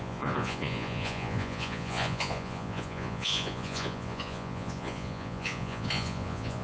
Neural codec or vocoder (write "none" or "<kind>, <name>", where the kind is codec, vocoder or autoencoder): vocoder, Vocos